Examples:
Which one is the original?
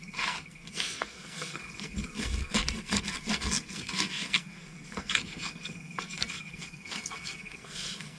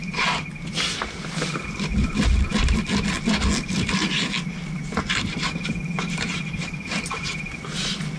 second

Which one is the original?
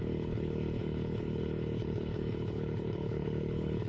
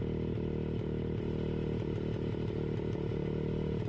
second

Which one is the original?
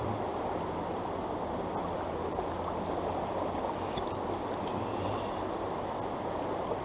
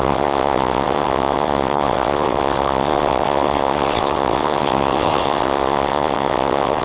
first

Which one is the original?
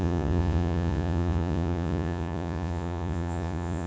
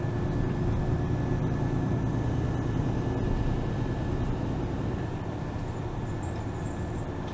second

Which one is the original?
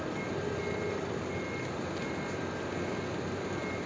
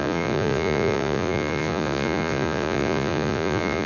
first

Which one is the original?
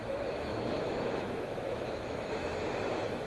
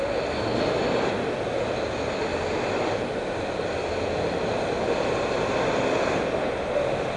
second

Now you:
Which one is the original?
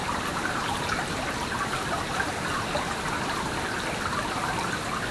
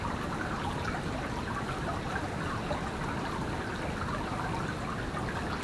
second